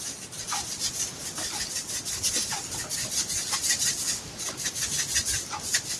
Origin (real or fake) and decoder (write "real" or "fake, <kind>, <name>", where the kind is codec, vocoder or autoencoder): real